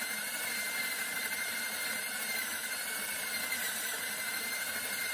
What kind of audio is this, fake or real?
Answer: fake